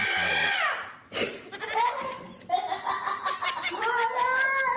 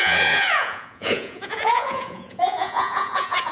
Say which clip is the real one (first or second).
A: first